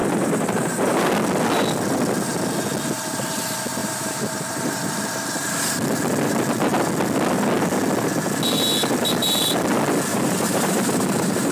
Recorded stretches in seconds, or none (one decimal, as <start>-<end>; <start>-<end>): 1.1-3.8; 5.1-10.1